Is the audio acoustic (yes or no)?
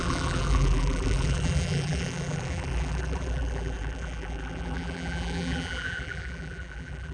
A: no